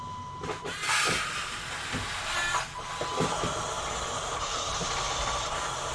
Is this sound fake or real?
real